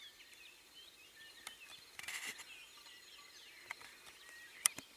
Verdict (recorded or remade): recorded